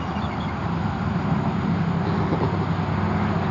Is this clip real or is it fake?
real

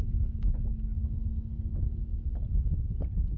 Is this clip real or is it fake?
real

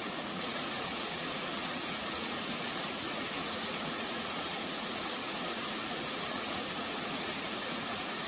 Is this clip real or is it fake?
fake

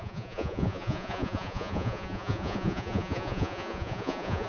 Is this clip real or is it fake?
fake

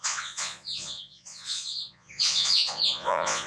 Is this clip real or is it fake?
fake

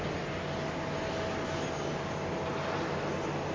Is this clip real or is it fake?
real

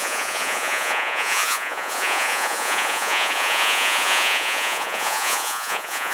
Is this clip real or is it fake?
fake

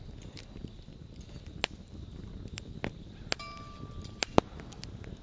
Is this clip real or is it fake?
real